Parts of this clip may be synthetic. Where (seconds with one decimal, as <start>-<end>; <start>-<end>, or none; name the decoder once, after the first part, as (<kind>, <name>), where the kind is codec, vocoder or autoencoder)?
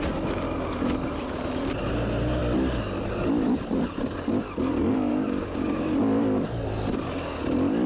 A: 5.1-5.9 (codec, DAC)